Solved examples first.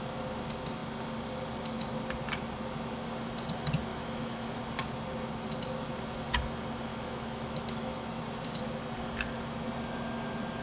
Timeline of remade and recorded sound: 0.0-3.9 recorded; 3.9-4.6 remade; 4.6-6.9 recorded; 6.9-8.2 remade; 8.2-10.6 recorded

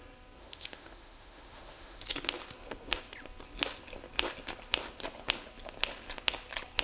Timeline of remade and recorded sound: 0.0-0.4 recorded; 0.4-2.0 remade; 2.0-6.8 recorded

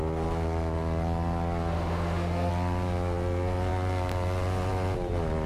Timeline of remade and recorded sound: 0.0-1.7 recorded; 1.7-2.5 remade; 2.5-5.5 recorded

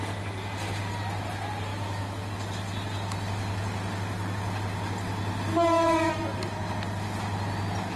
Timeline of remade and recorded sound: 0.0-1.7 recorded; 1.7-2.3 remade; 2.3-5.5 recorded; 5.5-6.1 remade; 6.1-8.0 recorded

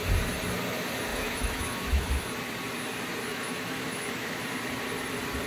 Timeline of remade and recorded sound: 0.0-1.1 recorded; 1.1-2.1 remade; 2.1-3.3 recorded; 3.3-4.4 remade; 4.4-5.5 recorded

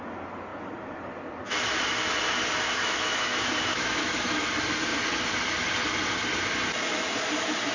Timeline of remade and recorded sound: 0.0-2.8 recorded; 2.8-4.5 remade; 4.5-7.7 recorded

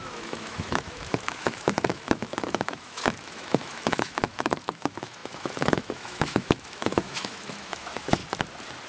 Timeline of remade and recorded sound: 0.0-8.2 remade; 8.2-8.9 recorded